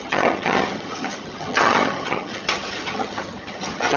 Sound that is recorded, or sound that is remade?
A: remade